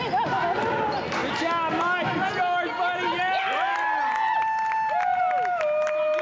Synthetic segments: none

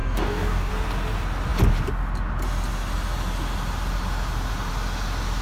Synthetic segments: 0.0-0.7